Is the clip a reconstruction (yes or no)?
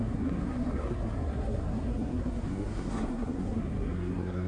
yes